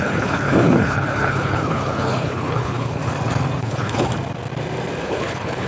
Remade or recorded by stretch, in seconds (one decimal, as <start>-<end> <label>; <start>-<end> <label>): 0.0-3.0 remade; 3.0-3.6 recorded; 3.6-4.1 remade; 4.1-5.0 recorded; 5.0-5.7 remade